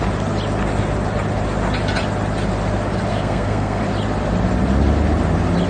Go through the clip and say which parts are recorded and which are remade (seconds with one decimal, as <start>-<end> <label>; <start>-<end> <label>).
0.0-3.1 recorded; 3.1-3.8 remade; 3.8-5.7 recorded